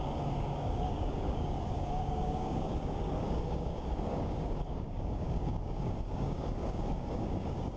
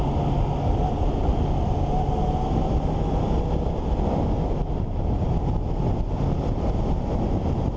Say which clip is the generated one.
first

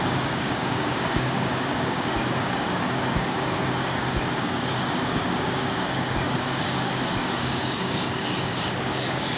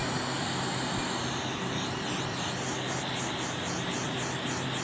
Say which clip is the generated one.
first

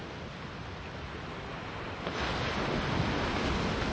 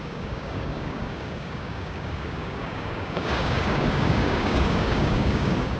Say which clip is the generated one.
second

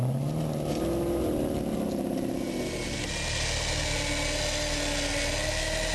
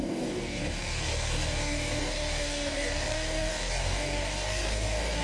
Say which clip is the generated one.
second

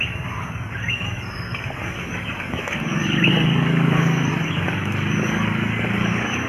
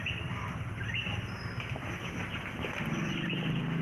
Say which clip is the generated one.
first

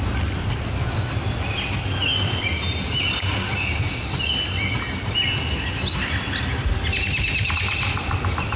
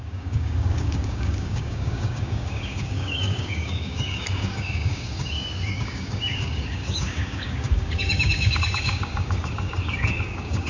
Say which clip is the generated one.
second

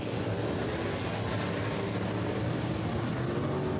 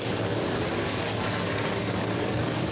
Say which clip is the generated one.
second